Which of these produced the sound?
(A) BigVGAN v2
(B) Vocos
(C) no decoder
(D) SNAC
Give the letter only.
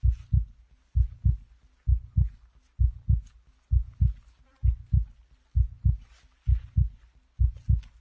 C